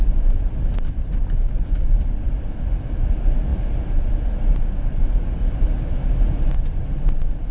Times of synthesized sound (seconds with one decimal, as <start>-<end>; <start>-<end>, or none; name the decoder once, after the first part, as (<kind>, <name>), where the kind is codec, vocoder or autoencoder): 0.0-5.4 (vocoder, BigVGAN v2); 6.0-7.5